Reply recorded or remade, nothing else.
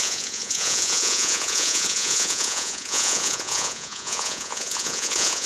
remade